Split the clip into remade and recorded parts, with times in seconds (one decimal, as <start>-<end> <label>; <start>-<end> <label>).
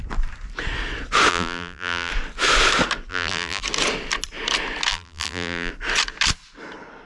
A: 0.0-1.3 recorded; 1.3-2.1 remade; 2.1-3.1 recorded; 3.1-3.6 remade; 3.6-4.9 recorded; 4.9-5.7 remade; 5.7-7.1 recorded